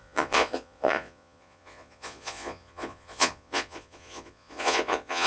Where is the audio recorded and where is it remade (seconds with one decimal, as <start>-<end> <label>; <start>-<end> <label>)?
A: 0.0-5.3 remade